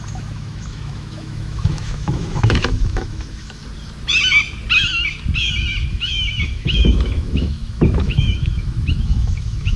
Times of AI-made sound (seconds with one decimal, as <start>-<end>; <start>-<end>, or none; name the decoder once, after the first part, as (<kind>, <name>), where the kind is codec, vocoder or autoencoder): 0.0-3.6 (autoencoder, DAC-VAE); 5.9-9.8